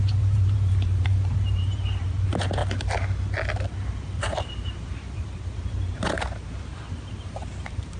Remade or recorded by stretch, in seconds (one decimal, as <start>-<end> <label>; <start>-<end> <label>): 0.0-2.6 remade; 2.6-3.6 recorded; 3.6-8.0 remade